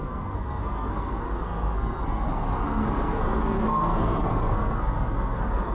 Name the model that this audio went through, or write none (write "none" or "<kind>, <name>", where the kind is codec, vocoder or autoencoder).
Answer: codec, SNAC